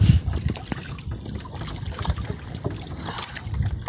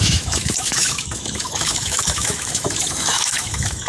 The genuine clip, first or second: first